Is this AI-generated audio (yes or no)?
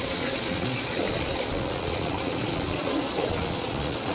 yes